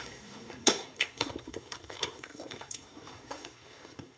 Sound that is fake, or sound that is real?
fake